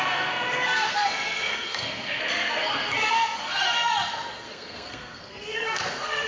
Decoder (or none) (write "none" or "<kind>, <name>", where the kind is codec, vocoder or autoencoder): codec, SNAC